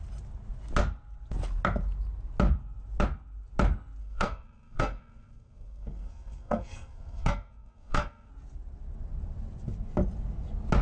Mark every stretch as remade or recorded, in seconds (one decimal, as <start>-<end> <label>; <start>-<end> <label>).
0.0-4.0 recorded; 4.0-8.3 remade; 8.3-10.8 recorded